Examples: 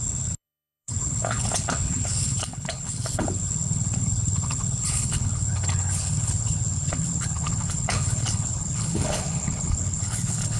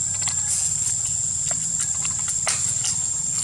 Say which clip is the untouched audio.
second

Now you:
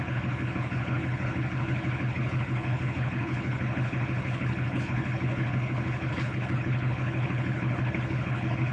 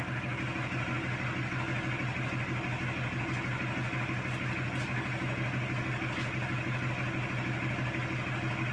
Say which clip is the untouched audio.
second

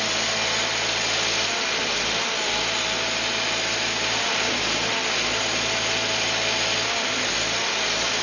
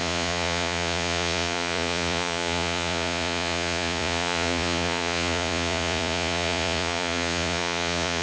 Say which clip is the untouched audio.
first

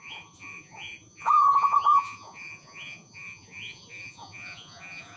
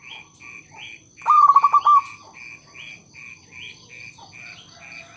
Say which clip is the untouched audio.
second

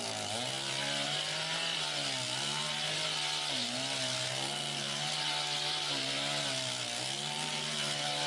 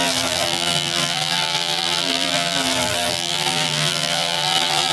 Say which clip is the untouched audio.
first